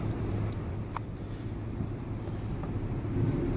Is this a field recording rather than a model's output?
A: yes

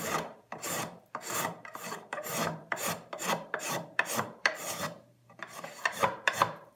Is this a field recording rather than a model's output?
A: no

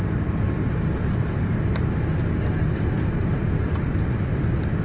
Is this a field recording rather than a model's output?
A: yes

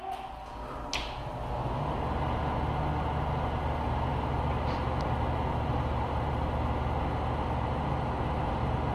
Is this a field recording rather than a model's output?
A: yes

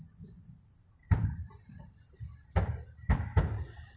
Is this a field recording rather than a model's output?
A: no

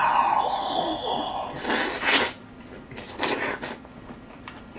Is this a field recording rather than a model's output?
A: yes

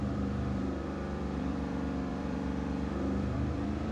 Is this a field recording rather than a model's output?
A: no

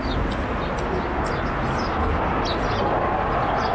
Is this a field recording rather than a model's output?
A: yes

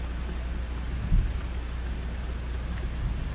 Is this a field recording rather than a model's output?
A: yes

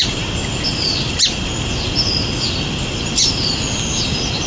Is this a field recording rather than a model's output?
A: yes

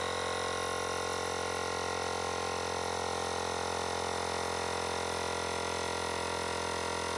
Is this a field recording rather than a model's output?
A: yes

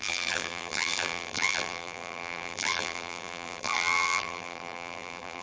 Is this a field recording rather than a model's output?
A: no